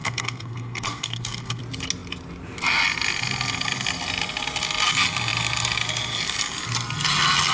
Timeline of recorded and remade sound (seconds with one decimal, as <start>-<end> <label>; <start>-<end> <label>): 0.0-1.6 remade; 1.6-7.5 recorded